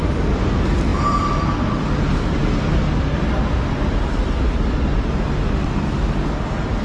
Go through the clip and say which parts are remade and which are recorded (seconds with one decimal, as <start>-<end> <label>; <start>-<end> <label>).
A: 0.0-6.8 recorded